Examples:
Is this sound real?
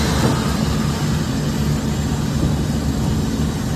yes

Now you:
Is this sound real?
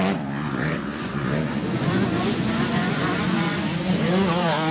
no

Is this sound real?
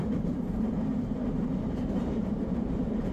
no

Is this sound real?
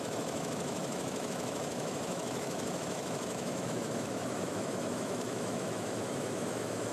no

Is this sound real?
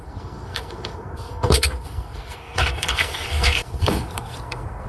no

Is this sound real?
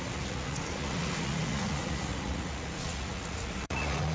no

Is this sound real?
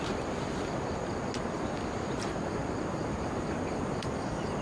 yes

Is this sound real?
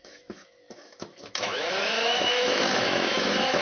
no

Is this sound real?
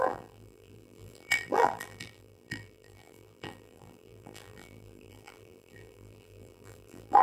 no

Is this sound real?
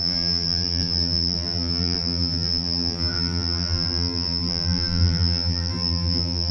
no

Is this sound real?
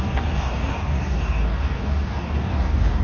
no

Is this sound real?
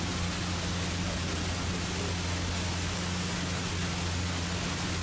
yes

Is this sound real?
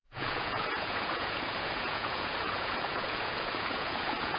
no